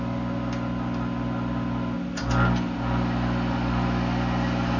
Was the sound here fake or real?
real